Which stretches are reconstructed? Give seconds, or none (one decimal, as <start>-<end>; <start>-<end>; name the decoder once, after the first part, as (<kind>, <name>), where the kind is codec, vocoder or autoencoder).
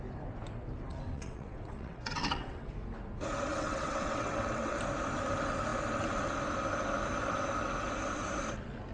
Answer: 0.9-2.7 (vocoder, WaveNeXt); 3.5-4.8